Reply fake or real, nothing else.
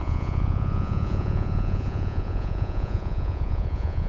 fake